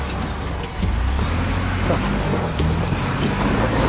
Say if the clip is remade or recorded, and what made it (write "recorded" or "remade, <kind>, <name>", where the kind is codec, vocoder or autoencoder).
recorded